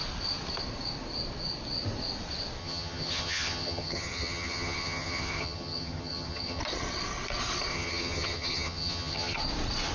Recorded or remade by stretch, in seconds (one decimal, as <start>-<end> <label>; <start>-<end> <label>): 0.0-2.6 recorded; 2.6-6.6 remade; 6.6-7.7 recorded; 7.7-9.4 remade; 9.4-9.9 recorded